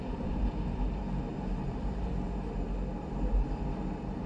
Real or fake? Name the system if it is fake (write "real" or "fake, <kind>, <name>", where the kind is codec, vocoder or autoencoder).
fake, vocoder, BigVGAN v2